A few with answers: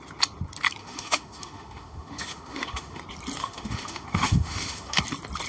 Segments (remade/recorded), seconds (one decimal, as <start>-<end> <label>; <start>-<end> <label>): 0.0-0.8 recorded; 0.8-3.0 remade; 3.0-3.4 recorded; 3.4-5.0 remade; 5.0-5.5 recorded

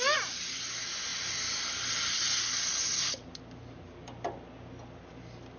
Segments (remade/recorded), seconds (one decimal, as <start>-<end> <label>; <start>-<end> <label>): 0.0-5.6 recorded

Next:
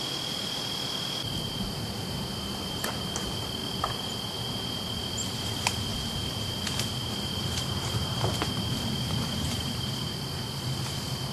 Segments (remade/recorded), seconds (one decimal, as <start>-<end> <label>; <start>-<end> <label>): 0.0-5.9 recorded; 5.9-6.6 remade; 6.6-7.0 recorded; 7.0-8.4 remade; 8.4-9.3 recorded; 9.3-10.3 remade; 10.3-11.3 recorded

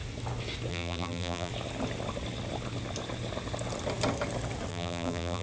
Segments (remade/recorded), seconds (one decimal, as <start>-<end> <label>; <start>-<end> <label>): 0.0-0.7 recorded; 0.7-1.5 remade; 1.5-4.7 recorded; 4.7-5.4 remade

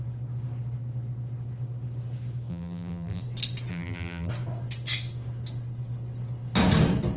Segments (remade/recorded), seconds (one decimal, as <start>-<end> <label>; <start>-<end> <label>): 0.0-2.5 recorded; 2.5-3.2 remade; 3.2-3.7 recorded; 3.7-4.3 remade; 4.3-7.2 recorded